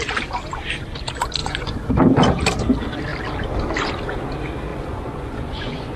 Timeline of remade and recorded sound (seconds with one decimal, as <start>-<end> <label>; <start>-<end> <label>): 0.0-1.4 recorded; 1.4-1.9 remade; 1.9-4.7 recorded; 4.7-6.0 remade